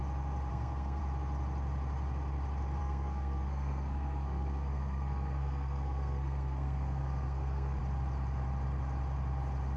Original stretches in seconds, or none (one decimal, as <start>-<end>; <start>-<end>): 0.0-0.5; 1.0-2.8; 7.8-9.8